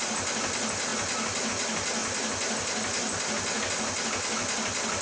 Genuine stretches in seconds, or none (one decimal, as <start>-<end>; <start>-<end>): 0.0-5.0